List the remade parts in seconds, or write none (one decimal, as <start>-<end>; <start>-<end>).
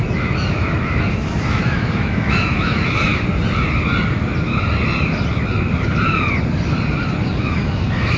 0.0-3.1; 7.2-8.2